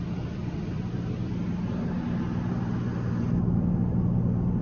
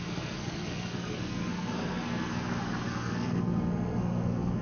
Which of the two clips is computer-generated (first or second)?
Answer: second